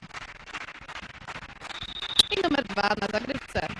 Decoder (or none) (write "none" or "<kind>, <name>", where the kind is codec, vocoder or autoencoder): none